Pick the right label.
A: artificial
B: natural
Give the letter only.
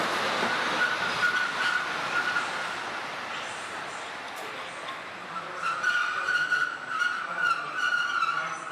B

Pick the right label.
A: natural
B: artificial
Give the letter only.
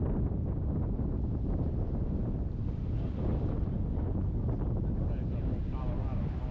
A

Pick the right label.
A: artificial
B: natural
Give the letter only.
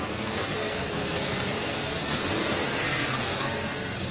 A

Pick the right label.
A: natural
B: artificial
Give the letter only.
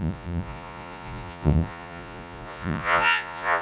B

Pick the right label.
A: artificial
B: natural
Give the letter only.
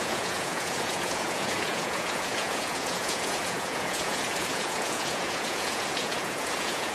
A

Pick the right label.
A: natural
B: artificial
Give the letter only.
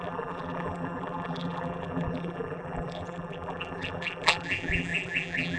B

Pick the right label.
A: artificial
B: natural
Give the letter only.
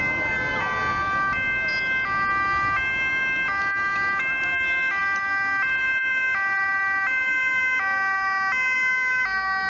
B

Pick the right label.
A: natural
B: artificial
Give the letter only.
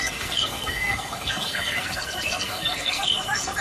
B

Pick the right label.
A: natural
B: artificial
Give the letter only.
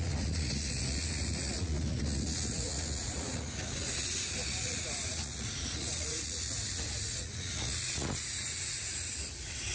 B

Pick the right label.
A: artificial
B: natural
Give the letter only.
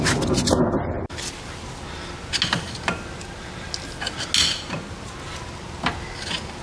B